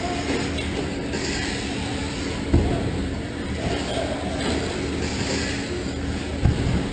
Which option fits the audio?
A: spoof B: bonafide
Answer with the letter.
A